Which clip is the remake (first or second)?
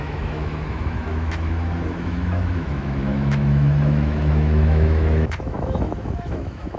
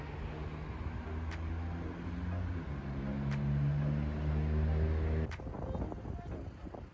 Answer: first